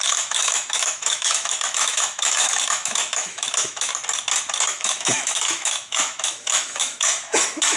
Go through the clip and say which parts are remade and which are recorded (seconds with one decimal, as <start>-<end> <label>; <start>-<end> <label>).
0.0-3.9 remade; 3.9-4.7 recorded; 4.7-7.8 remade